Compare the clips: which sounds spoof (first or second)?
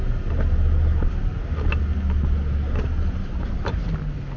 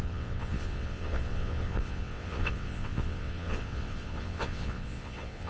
second